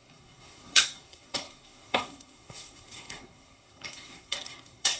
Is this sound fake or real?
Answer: fake